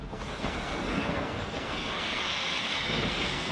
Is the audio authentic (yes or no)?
no